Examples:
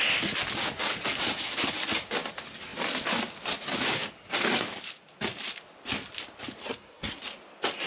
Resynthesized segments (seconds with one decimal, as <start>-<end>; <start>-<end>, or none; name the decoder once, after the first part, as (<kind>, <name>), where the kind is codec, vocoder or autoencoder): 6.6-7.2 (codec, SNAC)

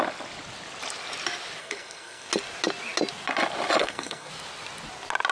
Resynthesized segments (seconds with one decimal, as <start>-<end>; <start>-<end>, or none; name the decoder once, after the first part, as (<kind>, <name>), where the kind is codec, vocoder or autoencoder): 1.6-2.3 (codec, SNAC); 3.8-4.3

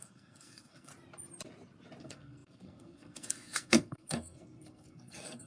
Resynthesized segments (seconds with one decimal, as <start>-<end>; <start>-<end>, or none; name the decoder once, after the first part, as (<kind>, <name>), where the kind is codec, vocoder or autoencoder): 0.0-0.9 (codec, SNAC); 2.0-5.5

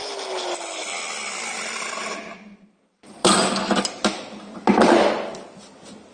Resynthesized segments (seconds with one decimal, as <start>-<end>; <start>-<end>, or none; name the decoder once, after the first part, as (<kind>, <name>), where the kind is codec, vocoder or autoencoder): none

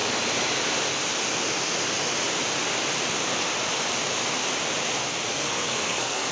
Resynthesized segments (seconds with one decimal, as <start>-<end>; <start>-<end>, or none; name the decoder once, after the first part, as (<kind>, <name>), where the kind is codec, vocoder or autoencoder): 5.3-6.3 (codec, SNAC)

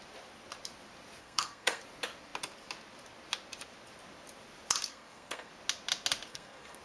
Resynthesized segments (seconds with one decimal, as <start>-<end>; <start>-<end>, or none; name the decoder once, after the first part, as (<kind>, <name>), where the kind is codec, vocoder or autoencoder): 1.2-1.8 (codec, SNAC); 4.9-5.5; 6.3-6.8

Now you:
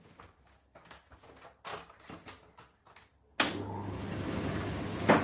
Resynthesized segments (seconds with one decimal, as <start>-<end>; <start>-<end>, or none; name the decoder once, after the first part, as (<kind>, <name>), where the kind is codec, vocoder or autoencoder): none

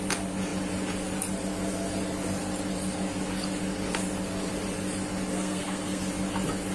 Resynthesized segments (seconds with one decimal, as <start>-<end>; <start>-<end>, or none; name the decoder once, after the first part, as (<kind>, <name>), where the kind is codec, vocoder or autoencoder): 5.3-6.0 (codec, SNAC)